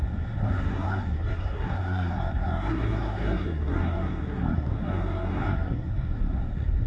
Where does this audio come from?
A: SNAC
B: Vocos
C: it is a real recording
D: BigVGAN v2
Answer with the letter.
A